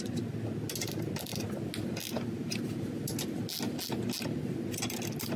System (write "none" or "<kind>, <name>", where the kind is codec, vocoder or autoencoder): none